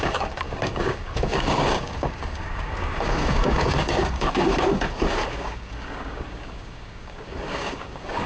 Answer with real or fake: fake